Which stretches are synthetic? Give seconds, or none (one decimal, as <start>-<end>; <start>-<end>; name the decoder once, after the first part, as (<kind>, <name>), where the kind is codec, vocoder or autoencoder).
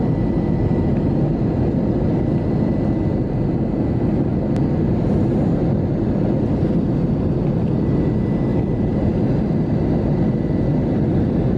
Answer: 8.5-9.4 (vocoder, BigVGAN v2)